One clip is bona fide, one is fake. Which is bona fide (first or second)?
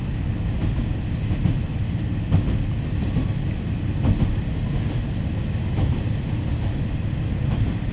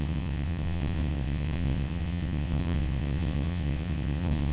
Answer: first